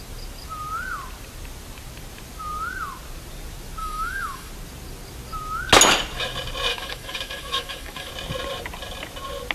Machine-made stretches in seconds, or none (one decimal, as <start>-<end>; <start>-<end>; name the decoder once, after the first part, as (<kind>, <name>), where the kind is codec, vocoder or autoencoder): 3.8-4.5 (autoencoder, DAC-VAE); 6.7-8.1